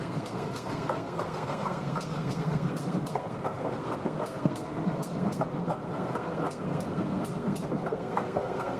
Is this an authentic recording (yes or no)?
no